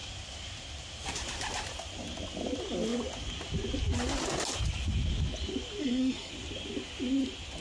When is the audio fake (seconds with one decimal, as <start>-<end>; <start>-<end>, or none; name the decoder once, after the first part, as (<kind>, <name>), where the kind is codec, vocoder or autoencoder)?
5.8-6.3 (codec, SNAC)